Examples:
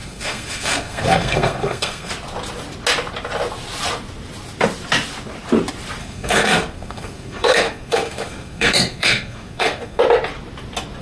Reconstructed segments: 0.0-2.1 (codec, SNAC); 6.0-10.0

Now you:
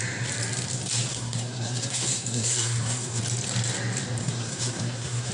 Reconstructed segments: 1.1-3.2 (codec, SNAC); 4.2-5.3